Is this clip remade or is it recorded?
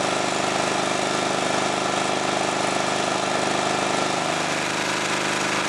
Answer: recorded